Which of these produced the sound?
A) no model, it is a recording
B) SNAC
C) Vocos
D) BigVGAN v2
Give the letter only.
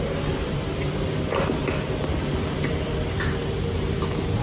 A